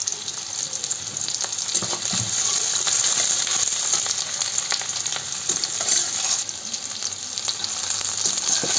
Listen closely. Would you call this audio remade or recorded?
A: recorded